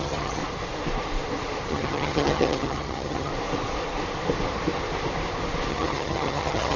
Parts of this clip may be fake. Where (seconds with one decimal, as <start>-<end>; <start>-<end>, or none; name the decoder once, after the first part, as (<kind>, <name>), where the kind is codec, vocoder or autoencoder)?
0.0-0.4 (vocoder, HiFi-GAN); 1.7-3.3; 5.7-6.8